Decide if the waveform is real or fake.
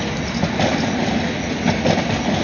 real